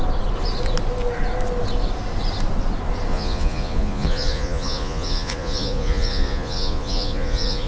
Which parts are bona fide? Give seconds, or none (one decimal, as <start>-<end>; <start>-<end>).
0.0-3.1